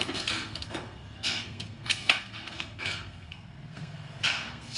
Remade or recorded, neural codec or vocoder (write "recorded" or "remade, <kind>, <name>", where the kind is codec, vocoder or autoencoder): remade, codec, SNAC